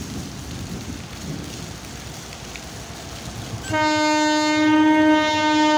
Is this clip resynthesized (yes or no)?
no